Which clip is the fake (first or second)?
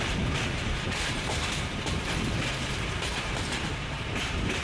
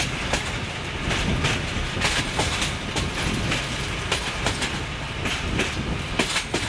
first